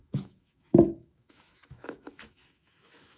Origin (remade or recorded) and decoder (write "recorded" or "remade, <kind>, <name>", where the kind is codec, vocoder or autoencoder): remade, autoencoder, DAC-VAE